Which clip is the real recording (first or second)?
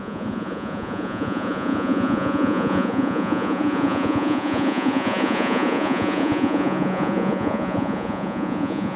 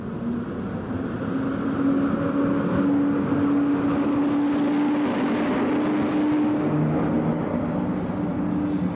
second